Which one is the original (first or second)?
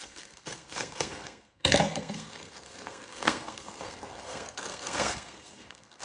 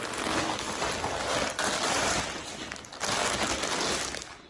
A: second